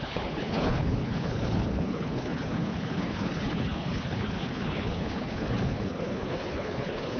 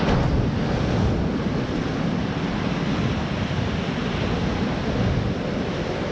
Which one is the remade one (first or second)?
first